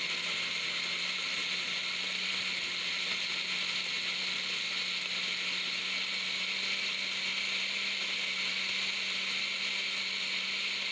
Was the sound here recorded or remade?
recorded